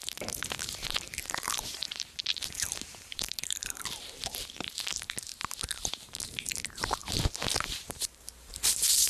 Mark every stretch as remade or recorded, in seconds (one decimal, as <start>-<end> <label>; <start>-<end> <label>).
0.0-5.3 remade; 5.3-5.9 recorded; 5.9-9.1 remade

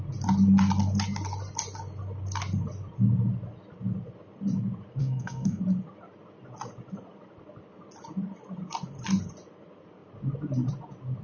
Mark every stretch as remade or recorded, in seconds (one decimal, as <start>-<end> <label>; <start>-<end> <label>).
0.0-5.0 recorded; 5.0-5.6 remade; 5.6-11.2 recorded

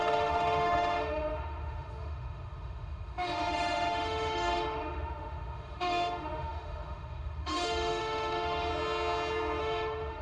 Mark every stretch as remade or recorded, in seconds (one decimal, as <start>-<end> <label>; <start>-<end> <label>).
0.0-8.7 remade; 8.7-9.6 recorded; 9.6-10.2 remade

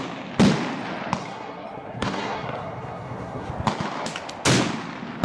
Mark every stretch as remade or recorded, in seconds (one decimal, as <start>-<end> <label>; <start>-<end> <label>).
0.0-1.2 recorded; 1.2-3.5 remade; 3.5-5.2 recorded

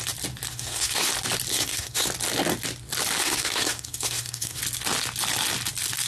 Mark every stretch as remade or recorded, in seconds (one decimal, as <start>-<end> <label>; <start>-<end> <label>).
0.0-0.5 recorded; 0.5-1.1 remade; 1.1-1.5 recorded; 1.5-2.1 remade; 2.1-3.2 recorded; 3.2-4.6 remade; 4.6-6.1 recorded